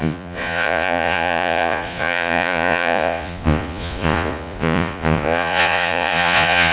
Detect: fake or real fake